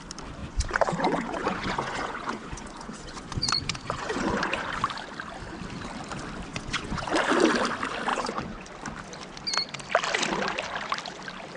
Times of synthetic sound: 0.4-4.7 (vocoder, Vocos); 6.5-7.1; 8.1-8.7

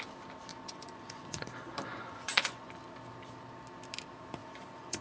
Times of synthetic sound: 0.5-1.5 (vocoder, Vocos); 1.9-2.7; 4.4-5.0

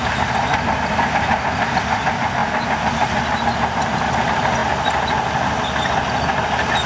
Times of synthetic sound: none

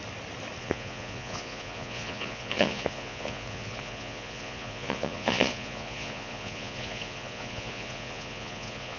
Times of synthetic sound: 0.6-9.0 (vocoder, Vocos)